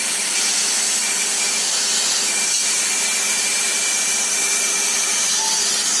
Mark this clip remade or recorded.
recorded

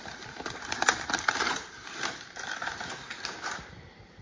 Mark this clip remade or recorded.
remade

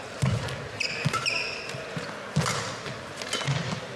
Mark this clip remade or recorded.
recorded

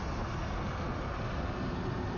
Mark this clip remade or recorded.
recorded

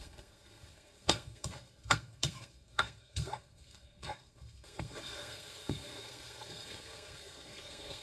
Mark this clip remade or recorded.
remade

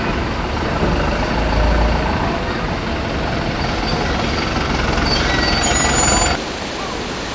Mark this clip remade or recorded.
recorded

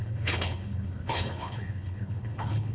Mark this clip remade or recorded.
remade